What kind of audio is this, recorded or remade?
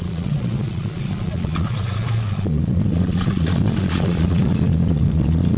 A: remade